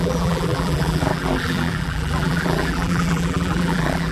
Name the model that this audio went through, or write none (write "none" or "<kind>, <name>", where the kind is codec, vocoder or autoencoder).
vocoder, BigVGAN v2